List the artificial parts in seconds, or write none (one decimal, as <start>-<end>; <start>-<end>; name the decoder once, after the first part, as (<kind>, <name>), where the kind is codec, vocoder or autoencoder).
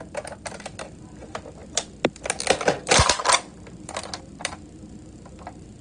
none